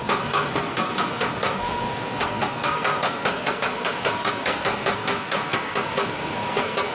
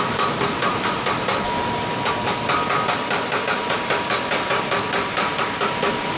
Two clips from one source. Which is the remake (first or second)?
first